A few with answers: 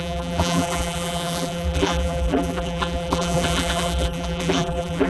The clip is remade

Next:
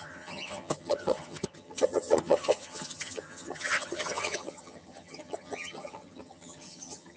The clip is remade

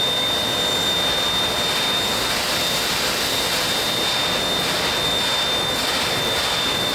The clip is recorded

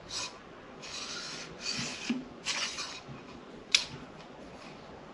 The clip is remade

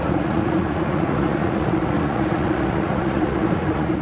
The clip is remade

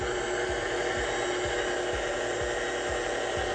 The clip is recorded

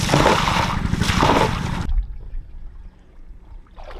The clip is recorded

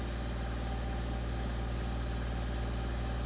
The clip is recorded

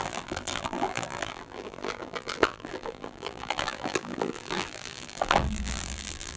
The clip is remade